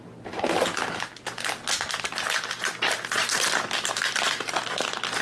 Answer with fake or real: real